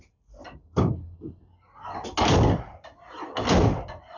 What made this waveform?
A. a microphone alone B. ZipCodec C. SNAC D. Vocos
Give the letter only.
A